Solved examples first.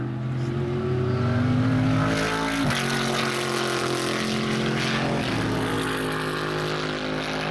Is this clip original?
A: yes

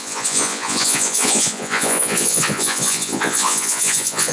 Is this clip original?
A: no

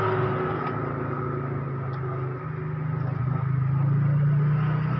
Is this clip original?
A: yes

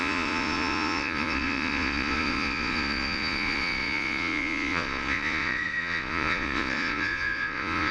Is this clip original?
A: no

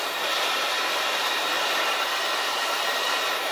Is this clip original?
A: no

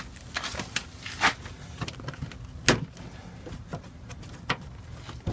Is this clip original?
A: yes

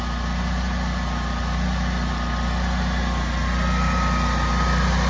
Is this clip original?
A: yes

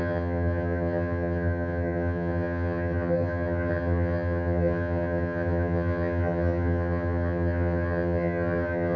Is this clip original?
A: no